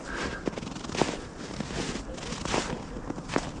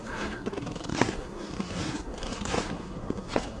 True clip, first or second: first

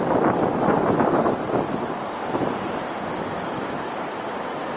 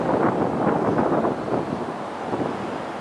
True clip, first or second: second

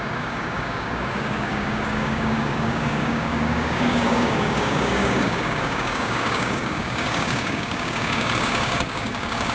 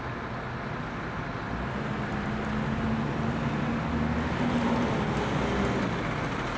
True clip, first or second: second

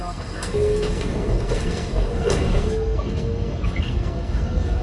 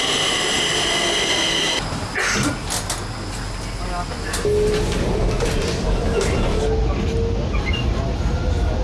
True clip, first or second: second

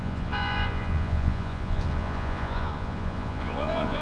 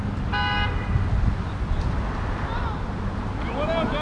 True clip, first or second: second